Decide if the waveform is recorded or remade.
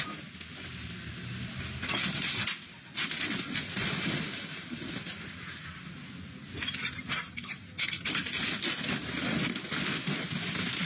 recorded